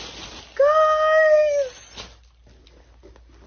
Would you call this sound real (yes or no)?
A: yes